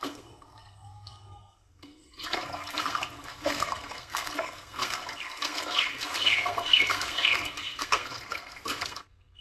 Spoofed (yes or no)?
yes